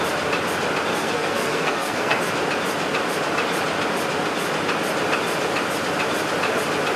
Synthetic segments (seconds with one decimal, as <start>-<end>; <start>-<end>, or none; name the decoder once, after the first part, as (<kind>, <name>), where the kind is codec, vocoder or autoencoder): 0.9-2.2 (codec, SNAC)